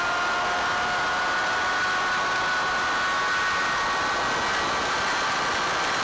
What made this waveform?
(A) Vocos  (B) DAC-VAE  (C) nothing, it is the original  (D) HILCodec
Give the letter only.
C